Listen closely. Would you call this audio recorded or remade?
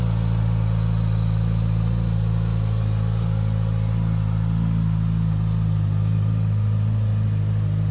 recorded